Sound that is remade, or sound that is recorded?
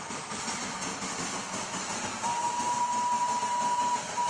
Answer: recorded